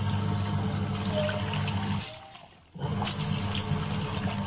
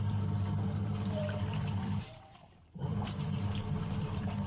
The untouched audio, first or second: first